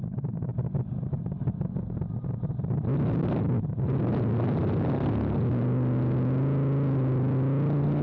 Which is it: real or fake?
real